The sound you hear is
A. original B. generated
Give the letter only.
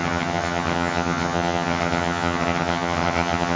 B